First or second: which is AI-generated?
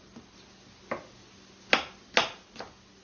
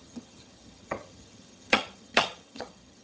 second